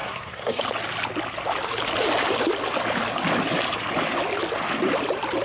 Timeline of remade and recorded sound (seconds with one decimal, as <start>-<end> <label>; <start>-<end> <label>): 0.0-0.6 remade; 0.6-5.4 recorded